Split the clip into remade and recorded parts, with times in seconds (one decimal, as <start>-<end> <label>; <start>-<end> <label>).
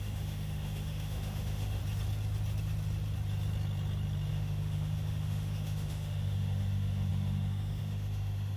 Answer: 0.0-1.8 remade; 1.8-4.3 recorded; 4.3-8.6 remade